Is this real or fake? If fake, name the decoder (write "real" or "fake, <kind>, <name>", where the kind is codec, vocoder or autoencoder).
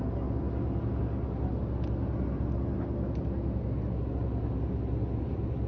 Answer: real